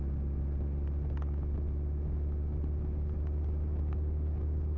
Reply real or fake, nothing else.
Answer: real